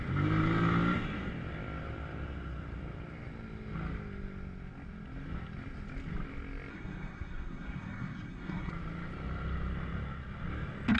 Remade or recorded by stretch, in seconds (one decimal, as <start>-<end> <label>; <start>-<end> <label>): 0.0-6.7 recorded; 6.7-8.7 remade; 8.7-11.0 recorded